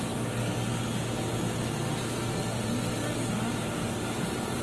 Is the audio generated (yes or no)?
no